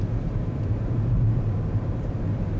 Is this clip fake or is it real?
fake